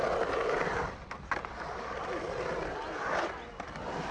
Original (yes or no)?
no